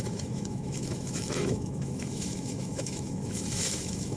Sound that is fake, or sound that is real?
fake